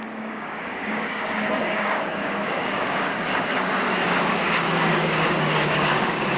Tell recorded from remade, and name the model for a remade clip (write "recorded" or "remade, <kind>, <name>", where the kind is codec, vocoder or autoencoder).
remade, codec, DAC